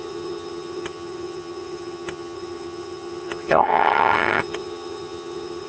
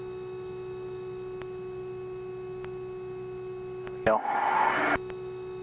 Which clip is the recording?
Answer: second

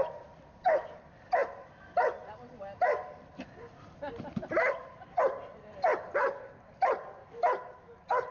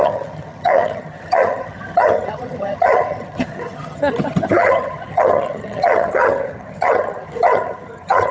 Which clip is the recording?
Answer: first